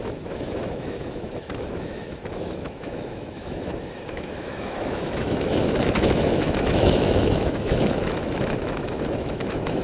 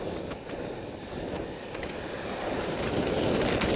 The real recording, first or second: second